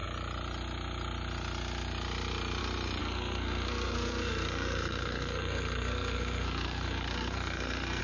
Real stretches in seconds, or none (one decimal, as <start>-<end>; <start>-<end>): 0.0-3.0